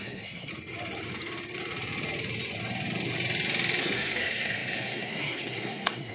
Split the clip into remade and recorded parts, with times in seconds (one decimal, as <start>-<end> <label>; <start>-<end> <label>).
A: 0.0-0.5 remade; 0.5-3.8 recorded; 3.8-6.1 remade